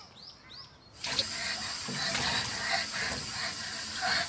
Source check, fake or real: real